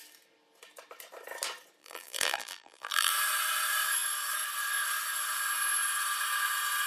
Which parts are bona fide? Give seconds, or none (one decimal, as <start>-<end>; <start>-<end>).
0.0-1.8; 3.1-6.9